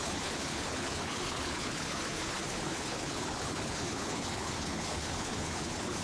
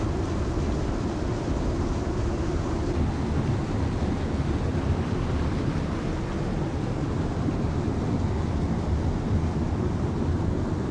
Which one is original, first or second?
second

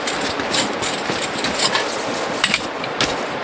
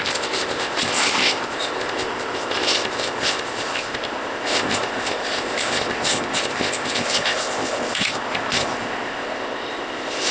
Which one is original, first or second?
first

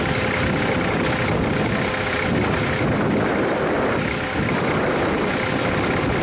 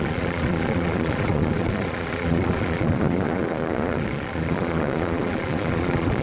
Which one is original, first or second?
first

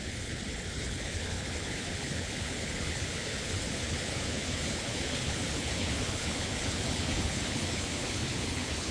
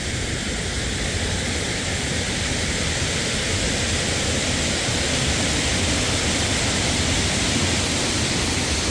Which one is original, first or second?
second